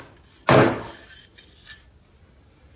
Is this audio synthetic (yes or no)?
no